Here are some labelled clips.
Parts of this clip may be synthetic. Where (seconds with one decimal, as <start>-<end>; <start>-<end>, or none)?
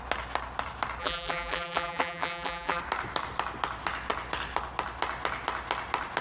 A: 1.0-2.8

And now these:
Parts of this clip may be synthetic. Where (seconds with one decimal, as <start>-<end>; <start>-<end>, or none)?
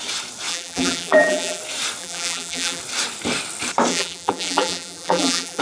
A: 0.5-1.6; 2.0-2.8; 3.9-5.6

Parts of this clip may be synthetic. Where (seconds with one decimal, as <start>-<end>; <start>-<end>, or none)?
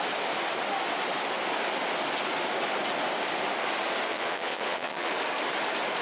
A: 4.1-5.1